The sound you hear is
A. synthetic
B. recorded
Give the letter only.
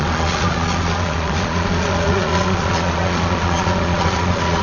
A